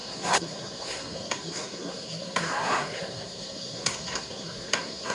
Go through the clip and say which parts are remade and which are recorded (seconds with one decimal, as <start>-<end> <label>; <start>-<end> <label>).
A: 0.0-5.1 remade